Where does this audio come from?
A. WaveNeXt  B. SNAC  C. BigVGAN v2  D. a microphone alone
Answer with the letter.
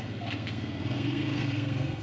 B